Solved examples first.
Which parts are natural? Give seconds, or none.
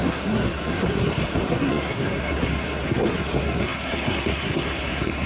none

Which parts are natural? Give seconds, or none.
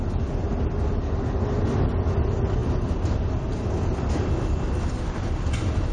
0.0-5.9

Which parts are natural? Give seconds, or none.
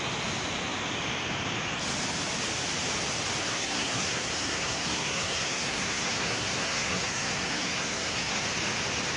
0.0-3.4; 8.4-9.2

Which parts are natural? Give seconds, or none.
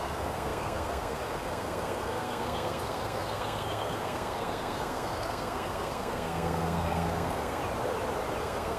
7.6-8.4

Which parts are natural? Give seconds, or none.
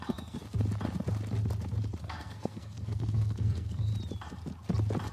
0.4-2.0; 3.9-5.1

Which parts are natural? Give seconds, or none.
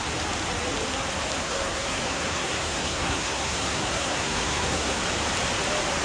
0.0-1.4; 5.0-6.0